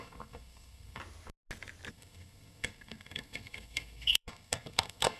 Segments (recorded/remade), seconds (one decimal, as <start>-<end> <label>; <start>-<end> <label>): 0.0-1.0 remade; 1.0-1.9 recorded; 1.9-5.2 remade